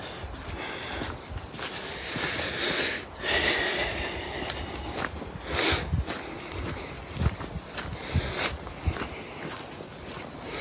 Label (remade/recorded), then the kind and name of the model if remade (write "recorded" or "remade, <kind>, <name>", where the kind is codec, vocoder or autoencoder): recorded